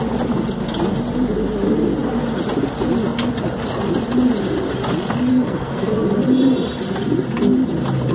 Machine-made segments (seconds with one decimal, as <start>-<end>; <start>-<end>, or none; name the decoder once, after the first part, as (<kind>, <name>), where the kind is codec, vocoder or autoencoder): 5.3-5.9 (codec, SNAC)